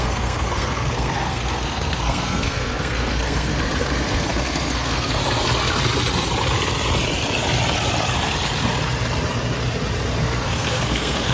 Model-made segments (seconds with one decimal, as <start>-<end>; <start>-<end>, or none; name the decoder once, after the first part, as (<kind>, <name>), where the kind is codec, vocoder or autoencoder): 0.0-5.2 (codec, SNAC); 10.2-11.3